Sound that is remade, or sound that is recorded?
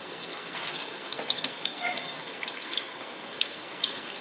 remade